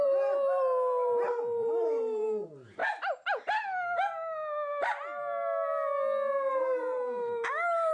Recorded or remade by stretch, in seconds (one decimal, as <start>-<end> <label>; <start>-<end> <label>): 0.0-2.8 remade; 2.8-6.5 recorded; 6.5-7.9 remade